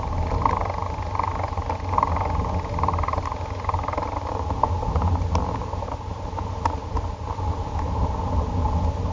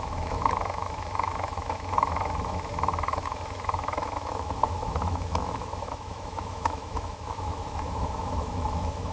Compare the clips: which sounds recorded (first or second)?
first